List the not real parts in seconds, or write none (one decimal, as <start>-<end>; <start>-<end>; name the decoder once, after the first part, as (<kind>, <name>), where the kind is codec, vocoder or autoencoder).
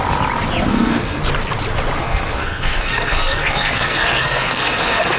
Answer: 0.7-1.2 (codec, SNAC); 2.0-5.2